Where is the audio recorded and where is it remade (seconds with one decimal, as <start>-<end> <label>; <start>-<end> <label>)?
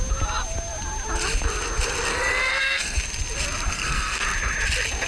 0.0-2.1 recorded; 2.1-3.0 remade; 3.0-3.7 recorded; 3.7-4.2 remade; 4.2-5.1 recorded